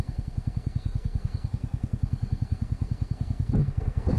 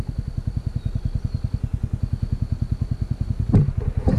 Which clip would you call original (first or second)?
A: second